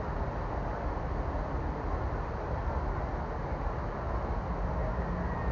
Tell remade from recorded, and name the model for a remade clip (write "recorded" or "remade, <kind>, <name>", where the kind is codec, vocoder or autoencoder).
recorded